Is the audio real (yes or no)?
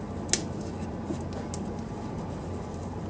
yes